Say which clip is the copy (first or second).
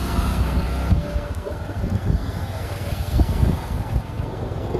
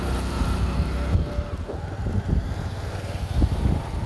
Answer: first